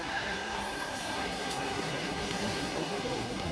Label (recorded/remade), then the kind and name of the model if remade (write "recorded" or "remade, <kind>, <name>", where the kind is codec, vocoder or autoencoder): remade, codec, SNAC